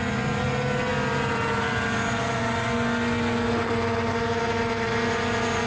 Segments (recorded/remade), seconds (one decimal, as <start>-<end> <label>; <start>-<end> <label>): 0.0-0.9 recorded; 0.9-4.1 remade; 4.1-5.7 recorded